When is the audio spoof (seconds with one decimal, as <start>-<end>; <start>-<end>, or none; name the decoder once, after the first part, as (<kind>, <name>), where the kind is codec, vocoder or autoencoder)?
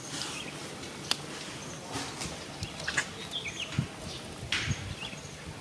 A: none